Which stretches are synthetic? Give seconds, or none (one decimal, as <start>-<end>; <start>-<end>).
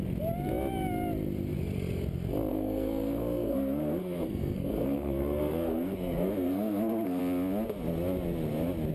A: 2.5-7.2